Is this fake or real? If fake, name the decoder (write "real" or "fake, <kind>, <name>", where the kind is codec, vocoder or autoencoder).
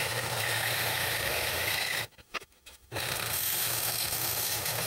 fake, autoencoder, DAC-VAE